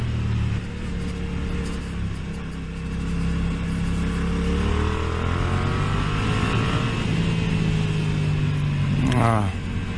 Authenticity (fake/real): real